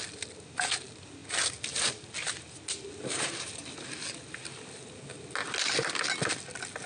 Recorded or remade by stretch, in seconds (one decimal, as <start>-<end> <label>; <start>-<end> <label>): 0.0-6.9 recorded